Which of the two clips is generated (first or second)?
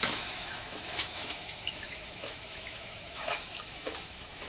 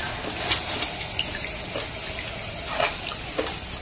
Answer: first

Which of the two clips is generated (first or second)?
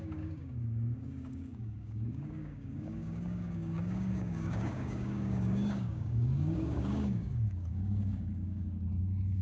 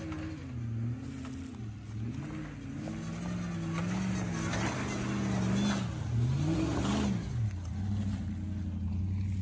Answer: first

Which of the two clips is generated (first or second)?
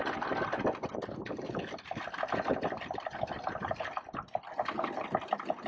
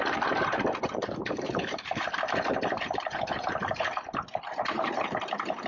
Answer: second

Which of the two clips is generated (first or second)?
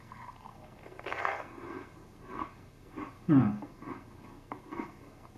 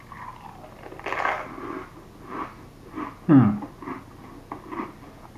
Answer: first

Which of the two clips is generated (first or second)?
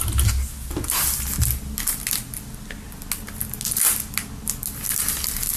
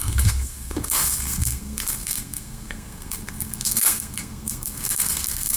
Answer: second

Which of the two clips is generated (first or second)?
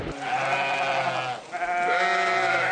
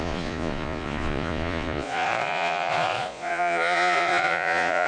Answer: second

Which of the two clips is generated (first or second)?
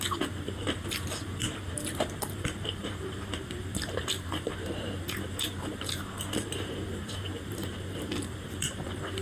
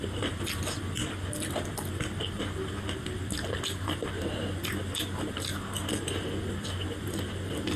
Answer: first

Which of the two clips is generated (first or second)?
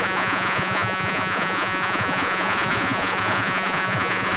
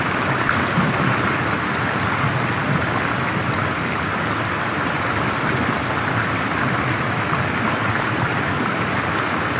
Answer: first